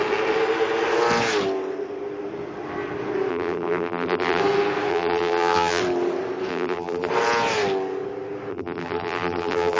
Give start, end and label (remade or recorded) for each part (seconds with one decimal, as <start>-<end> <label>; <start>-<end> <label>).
0.0-3.3 recorded; 3.3-4.4 remade; 4.4-4.9 recorded; 4.9-5.8 remade; 5.8-6.5 recorded; 6.5-7.1 remade; 7.1-8.5 recorded; 8.5-9.8 remade